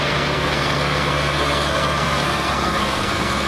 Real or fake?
fake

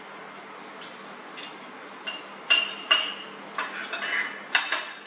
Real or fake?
real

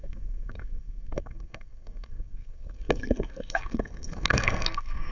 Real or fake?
fake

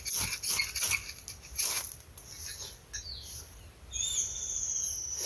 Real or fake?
real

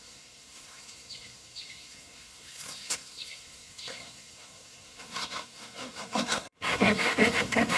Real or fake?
fake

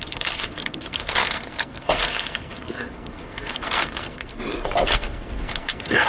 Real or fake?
fake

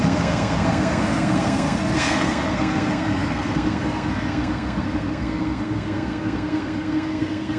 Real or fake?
fake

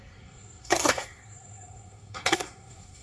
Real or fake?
fake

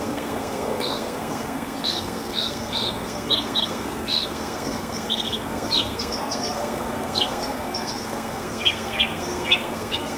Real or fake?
fake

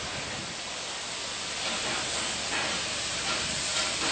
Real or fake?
real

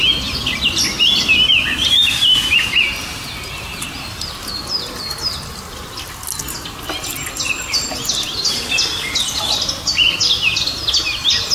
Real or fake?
real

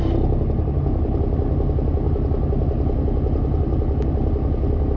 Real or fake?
real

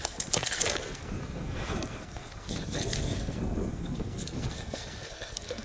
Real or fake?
fake